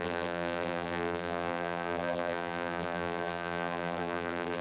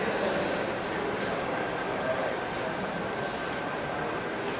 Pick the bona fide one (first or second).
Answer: second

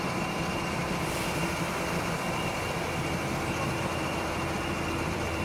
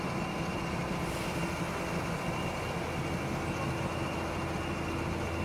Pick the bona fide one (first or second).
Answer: second